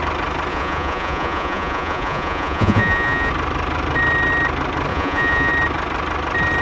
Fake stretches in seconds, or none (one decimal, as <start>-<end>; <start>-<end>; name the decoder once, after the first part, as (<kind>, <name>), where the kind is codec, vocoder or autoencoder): 0.5-3.3 (vocoder, Vocos); 4.9-5.5